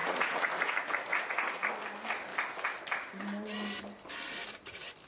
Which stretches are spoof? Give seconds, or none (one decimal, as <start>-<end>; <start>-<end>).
0.0-0.7; 1.1-1.7